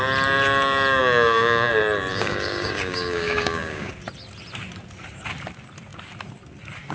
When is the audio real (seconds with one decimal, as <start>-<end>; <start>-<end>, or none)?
0.0-1.0; 1.7-2.1; 3.9-6.9